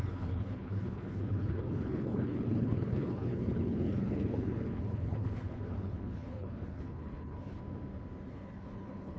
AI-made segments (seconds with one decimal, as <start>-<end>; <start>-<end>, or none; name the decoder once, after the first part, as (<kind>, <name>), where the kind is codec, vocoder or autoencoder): 0.0-7.6 (codec, HILCodec); 8.3-9.2